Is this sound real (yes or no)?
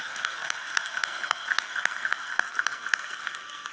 no